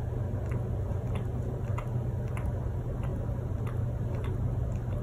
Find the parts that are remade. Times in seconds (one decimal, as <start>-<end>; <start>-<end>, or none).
none